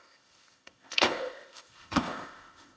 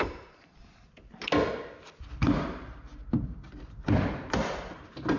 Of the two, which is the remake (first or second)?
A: first